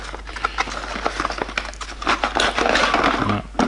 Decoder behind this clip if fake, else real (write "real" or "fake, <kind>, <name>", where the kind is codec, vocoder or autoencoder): real